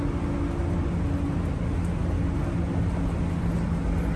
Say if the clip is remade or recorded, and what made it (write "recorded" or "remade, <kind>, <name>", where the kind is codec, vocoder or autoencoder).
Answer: recorded